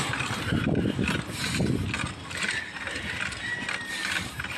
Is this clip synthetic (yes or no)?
no